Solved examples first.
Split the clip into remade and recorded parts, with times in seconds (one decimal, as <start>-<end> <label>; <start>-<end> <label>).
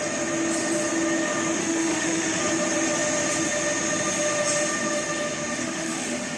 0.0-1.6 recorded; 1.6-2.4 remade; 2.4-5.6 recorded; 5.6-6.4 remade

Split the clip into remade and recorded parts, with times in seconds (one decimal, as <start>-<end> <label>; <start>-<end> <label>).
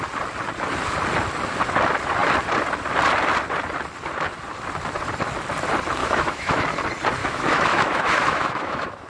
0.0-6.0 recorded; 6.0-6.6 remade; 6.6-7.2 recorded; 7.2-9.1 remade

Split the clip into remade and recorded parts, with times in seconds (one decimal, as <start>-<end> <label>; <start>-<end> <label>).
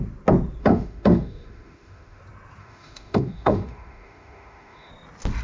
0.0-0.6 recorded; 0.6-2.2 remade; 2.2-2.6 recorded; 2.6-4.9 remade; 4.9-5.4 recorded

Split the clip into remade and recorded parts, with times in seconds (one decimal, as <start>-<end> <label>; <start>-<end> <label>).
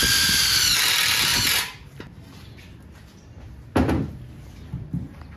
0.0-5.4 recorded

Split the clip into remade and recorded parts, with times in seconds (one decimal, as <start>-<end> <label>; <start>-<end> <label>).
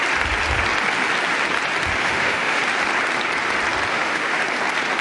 0.0-2.0 recorded; 2.0-2.6 remade; 2.6-3.9 recorded; 3.9-4.4 remade; 4.4-5.0 recorded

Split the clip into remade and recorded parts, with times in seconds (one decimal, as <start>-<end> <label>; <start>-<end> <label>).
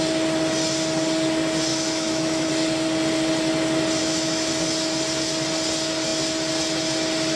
0.0-1.7 recorded; 1.7-2.5 remade; 2.5-4.0 recorded; 4.0-4.5 remade; 4.5-7.4 recorded